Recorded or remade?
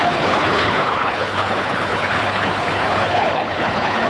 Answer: remade